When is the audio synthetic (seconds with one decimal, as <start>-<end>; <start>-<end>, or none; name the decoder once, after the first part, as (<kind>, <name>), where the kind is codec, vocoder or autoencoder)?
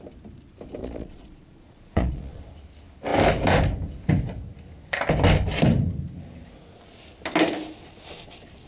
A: 0.8-2.5 (vocoder, Vocos)